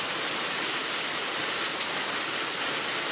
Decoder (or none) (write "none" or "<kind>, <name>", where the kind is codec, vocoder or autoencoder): none